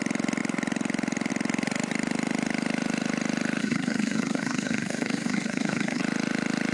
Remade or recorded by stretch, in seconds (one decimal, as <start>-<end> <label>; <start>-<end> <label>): 0.0-3.6 recorded; 3.6-6.0 remade; 6.0-6.7 recorded